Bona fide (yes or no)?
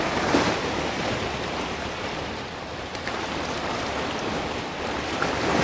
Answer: no